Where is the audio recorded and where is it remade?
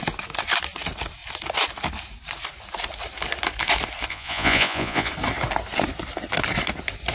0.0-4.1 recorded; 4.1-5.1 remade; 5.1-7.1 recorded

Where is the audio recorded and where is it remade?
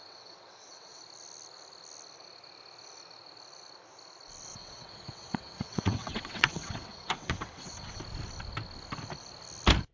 0.0-1.0 remade; 1.0-4.5 recorded; 4.5-8.0 remade; 8.0-9.9 recorded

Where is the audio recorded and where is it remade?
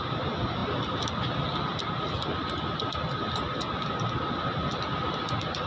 0.0-2.4 recorded; 2.4-3.1 remade; 3.1-4.6 recorded; 4.6-5.7 remade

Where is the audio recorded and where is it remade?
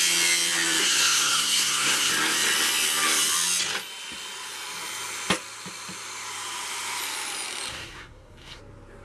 0.0-0.8 recorded; 0.8-2.1 remade; 2.1-7.7 recorded; 7.7-8.6 remade; 8.6-9.0 recorded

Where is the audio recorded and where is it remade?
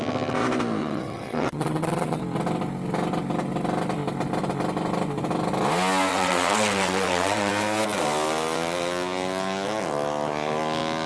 0.0-0.8 recorded; 0.8-2.2 remade; 2.2-6.1 recorded; 6.1-7.5 remade; 7.5-11.1 recorded